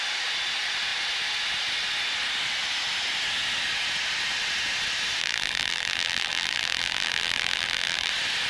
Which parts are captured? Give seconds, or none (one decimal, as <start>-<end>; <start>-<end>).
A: 0.0-5.2; 8.1-8.5